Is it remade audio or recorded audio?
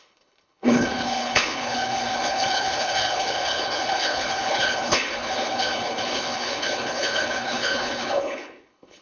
remade